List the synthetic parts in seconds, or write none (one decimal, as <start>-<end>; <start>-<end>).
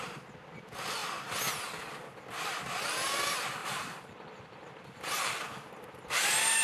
3.6-5.4